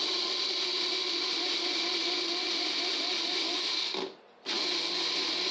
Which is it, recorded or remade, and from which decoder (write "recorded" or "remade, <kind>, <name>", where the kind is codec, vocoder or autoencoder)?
recorded